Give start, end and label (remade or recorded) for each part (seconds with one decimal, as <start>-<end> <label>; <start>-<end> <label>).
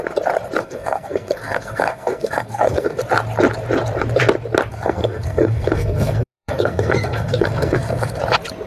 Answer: 0.0-0.6 recorded; 0.6-3.0 remade; 3.0-4.7 recorded; 4.7-8.2 remade; 8.2-8.7 recorded